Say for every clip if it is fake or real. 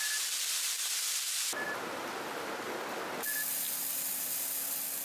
real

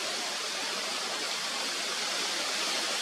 real